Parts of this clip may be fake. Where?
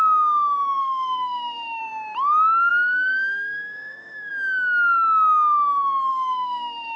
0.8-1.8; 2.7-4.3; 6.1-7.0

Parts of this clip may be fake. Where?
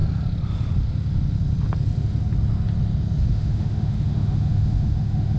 3.2-5.4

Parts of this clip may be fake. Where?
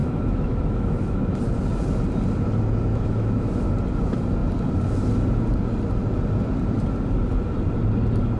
0.0-1.2; 2.9-3.6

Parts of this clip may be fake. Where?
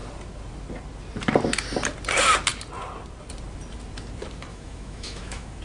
4.5-5.6